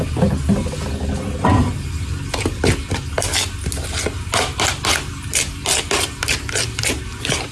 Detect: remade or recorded recorded